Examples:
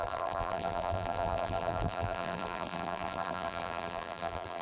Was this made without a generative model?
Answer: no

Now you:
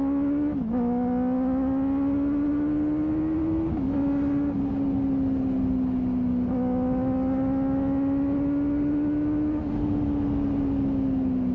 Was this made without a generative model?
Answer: yes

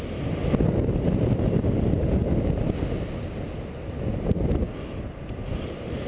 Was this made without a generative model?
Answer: yes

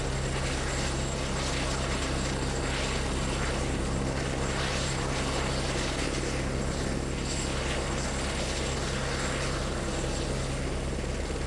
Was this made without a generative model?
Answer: yes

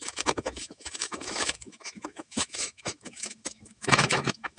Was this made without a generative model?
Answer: no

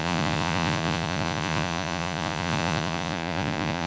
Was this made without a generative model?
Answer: no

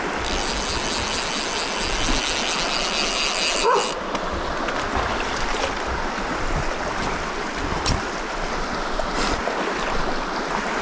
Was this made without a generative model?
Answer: yes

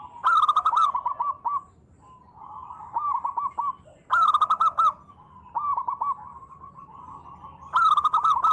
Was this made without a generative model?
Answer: yes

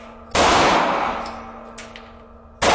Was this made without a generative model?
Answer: yes